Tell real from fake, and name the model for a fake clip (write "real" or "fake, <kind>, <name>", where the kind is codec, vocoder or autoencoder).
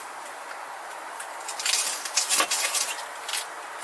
real